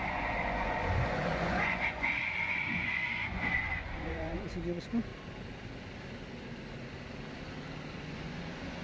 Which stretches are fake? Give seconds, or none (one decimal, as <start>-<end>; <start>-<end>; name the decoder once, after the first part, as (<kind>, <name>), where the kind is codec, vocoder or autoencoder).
0.0-5.1 (vocoder, Vocos); 8.0-8.8

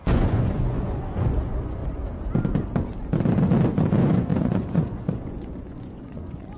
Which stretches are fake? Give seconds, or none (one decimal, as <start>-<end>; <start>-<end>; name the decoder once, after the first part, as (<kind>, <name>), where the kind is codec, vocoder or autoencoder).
0.0-1.8 (vocoder, Vocos); 3.9-6.6

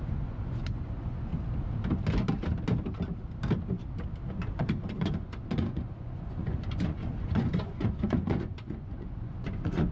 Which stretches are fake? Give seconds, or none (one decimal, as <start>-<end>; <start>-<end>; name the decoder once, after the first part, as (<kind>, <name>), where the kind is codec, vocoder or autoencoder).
0.0-1.3 (vocoder, Vocos); 4.3-9.9

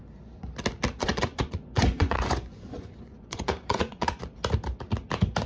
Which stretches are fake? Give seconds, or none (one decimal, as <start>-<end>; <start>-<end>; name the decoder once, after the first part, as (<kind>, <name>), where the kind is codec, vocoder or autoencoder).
1.0-4.2 (vocoder, Vocos)

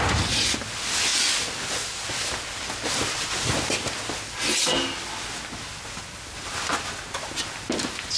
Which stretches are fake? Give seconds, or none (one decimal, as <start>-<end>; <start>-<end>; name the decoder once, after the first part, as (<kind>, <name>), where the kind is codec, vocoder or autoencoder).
none

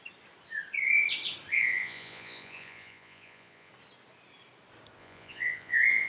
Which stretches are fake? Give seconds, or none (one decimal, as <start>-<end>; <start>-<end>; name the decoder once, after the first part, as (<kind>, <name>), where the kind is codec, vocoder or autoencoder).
1.5-3.7 (vocoder, Vocos); 5.0-6.1

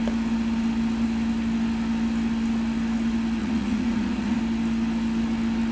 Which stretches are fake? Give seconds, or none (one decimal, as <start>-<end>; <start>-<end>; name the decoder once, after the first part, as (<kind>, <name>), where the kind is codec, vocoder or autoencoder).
3.4-4.4 (vocoder, Vocos)

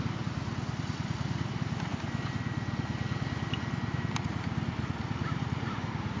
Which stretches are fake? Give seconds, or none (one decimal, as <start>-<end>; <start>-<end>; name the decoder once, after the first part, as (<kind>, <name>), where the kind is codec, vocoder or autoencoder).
none